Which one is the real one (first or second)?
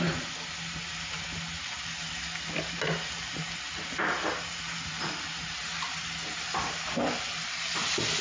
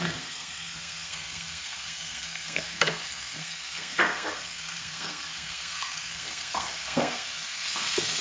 first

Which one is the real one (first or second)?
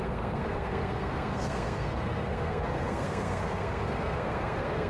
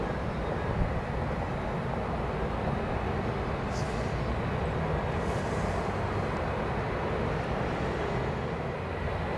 second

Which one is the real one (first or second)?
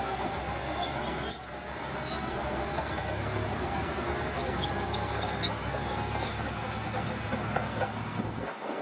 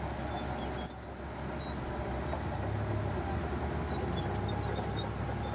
second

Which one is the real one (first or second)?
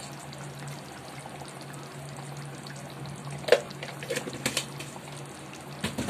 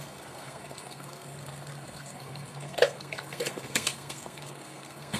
first